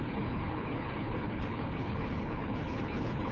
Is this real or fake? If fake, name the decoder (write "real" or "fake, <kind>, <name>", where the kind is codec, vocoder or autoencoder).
fake, codec, HILCodec